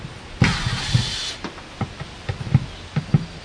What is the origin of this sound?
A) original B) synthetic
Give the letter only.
A